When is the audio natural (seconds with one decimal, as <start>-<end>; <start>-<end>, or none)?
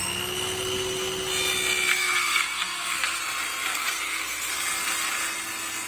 0.0-1.9; 3.2-3.7; 4.5-5.9